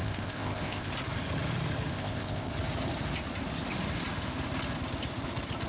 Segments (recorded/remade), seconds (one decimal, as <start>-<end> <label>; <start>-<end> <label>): 0.0-0.9 remade; 0.9-1.9 recorded; 1.9-2.5 remade; 2.5-5.7 recorded